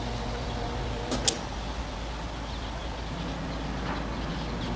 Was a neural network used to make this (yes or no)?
no